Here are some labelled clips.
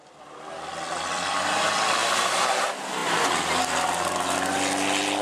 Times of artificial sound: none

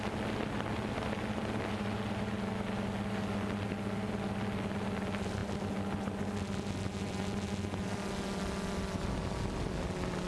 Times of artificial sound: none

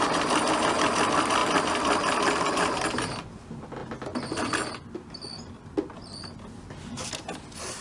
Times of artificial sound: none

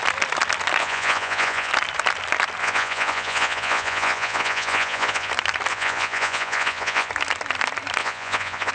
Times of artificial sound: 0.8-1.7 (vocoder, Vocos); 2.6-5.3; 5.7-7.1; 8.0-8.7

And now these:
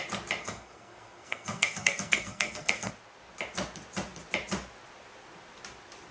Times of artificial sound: 0.4-2.9 (codec, SNAC)

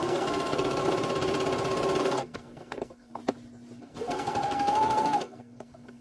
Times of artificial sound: 0.0-0.8 (codec, SNAC); 2.0-3.2; 3.8-6.0